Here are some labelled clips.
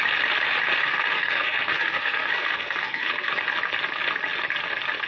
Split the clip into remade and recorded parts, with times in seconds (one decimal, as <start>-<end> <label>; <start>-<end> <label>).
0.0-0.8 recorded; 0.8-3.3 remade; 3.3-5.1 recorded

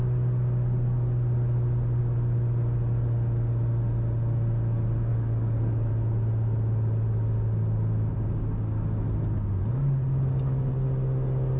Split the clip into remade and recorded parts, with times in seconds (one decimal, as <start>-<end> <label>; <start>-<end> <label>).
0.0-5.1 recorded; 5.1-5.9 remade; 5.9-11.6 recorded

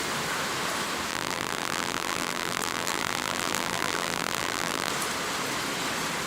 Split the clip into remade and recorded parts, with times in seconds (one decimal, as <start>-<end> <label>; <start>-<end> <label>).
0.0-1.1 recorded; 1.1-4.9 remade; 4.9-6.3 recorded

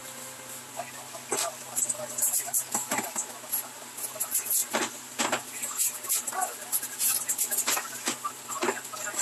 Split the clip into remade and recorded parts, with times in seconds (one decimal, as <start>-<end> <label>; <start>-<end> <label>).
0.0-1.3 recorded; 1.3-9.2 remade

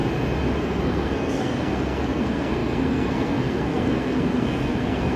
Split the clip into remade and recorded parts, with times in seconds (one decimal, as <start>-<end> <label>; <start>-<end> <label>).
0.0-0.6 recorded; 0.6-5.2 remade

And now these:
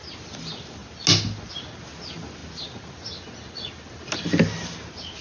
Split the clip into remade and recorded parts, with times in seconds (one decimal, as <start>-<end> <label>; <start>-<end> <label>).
0.0-5.2 recorded